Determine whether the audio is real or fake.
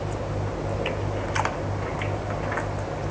real